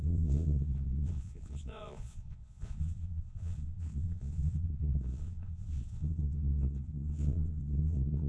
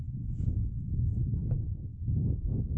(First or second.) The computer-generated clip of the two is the first